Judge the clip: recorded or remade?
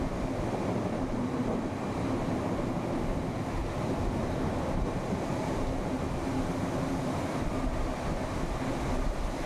recorded